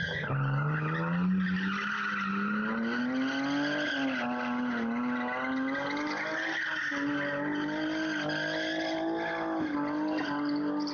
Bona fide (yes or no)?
yes